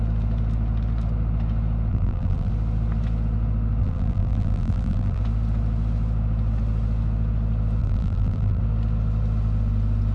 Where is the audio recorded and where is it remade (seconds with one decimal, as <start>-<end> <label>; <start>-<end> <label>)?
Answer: 0.0-1.9 recorded; 1.9-2.5 remade; 2.5-3.8 recorded; 3.8-5.2 remade; 5.2-7.8 recorded; 7.8-8.6 remade; 8.6-10.1 recorded